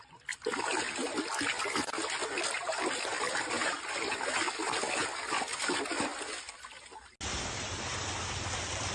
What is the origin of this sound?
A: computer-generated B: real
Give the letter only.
B